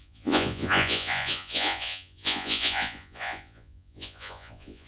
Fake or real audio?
fake